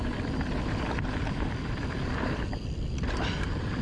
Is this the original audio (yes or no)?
no